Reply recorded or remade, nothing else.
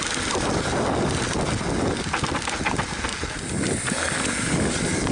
recorded